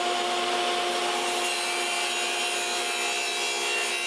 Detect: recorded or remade recorded